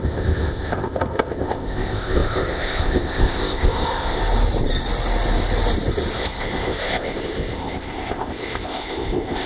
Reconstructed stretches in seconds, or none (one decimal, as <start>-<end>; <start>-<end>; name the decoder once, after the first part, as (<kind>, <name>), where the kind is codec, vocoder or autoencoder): 0.0-4.2 (codec, ZipCodec); 6.1-9.5